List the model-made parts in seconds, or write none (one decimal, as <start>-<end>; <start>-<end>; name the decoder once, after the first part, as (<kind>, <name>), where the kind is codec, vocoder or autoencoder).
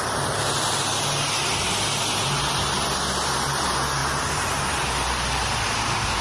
none